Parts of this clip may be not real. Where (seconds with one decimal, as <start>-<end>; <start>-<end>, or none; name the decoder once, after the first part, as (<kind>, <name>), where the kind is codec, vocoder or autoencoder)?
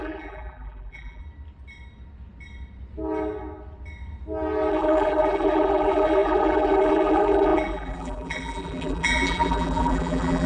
0.0-1.2 (vocoder, BigVGAN v2); 4.7-10.5